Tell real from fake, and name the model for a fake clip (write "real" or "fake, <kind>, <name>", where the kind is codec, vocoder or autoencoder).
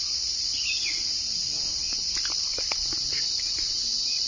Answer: real